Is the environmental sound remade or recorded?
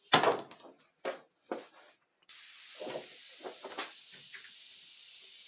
recorded